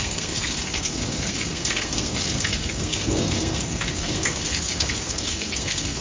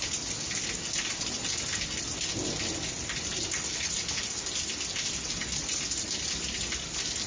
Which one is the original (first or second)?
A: second